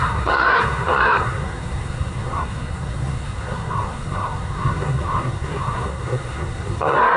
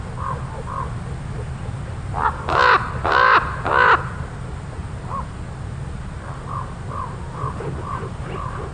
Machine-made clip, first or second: first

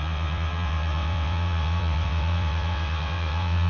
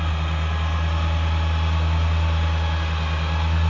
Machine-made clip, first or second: first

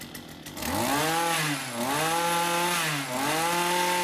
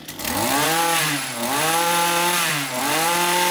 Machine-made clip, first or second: second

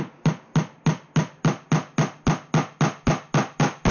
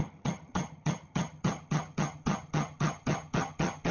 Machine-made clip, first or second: second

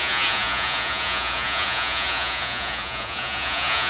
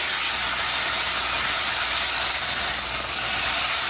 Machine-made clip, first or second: first